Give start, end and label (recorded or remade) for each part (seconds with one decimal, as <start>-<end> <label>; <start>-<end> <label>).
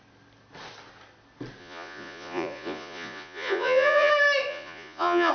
0.0-1.6 recorded; 1.6-4.1 remade; 4.1-4.5 recorded; 4.5-5.3 remade